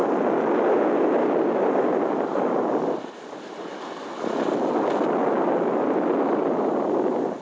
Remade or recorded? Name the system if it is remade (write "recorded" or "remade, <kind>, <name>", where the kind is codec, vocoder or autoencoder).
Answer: recorded